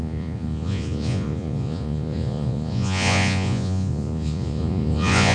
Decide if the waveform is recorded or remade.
remade